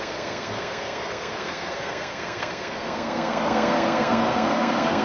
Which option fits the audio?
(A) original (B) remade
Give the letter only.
B